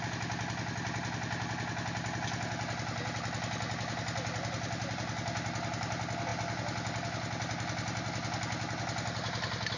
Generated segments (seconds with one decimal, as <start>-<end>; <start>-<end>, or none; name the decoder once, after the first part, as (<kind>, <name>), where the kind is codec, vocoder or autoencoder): none